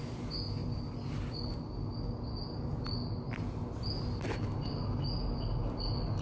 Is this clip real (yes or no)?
yes